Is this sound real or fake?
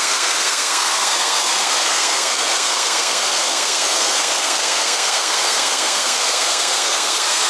fake